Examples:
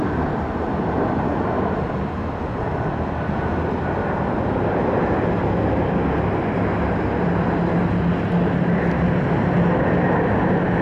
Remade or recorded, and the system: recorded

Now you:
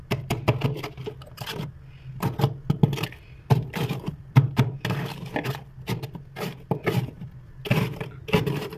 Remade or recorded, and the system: recorded